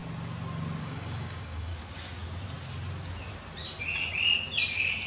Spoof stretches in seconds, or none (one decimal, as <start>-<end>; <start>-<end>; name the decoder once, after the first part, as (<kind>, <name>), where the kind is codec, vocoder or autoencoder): 0.8-1.7 (codec, DAC)